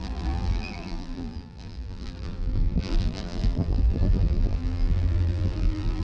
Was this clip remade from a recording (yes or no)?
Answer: yes